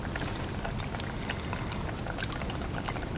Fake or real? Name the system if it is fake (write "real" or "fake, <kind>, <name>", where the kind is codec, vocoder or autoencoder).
real